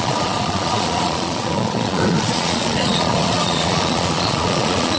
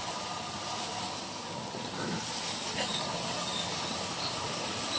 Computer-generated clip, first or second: first